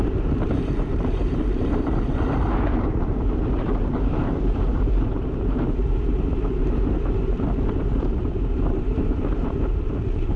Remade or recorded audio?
remade